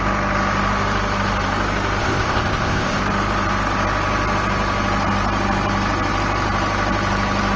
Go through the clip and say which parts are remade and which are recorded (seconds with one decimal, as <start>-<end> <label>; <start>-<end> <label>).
0.0-2.0 recorded; 2.0-3.0 remade; 3.0-7.6 recorded